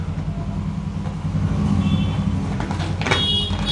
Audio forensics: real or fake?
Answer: real